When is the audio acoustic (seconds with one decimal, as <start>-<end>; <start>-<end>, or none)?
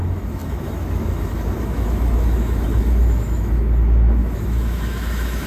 none